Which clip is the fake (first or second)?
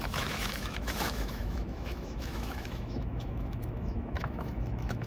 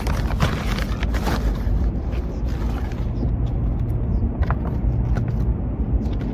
first